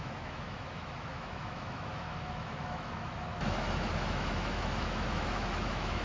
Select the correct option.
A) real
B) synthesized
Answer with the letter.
B